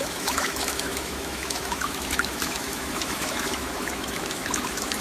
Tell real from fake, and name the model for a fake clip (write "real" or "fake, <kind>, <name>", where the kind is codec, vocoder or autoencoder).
fake, autoencoder, DAC-VAE